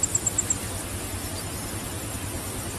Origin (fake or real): real